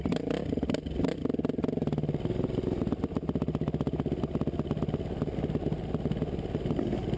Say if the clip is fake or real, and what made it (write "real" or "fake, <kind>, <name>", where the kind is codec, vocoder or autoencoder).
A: real